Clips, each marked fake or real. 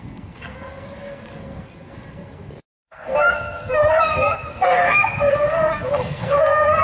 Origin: fake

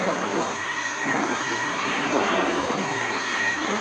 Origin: fake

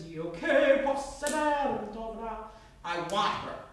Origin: real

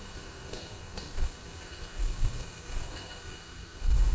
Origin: fake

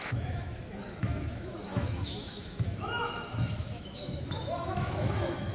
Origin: fake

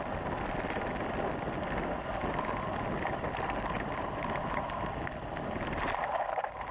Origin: real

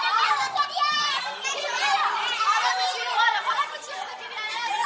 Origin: fake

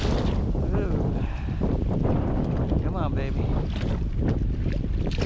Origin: real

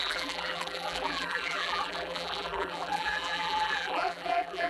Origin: fake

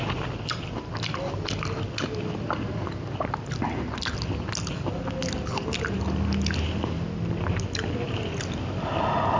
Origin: real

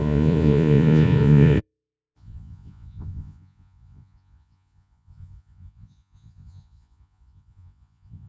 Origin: fake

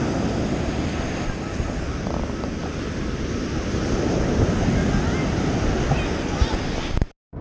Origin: real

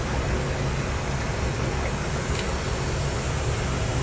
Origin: real